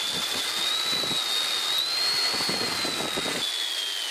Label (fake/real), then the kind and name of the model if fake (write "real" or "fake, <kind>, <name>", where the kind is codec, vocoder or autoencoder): real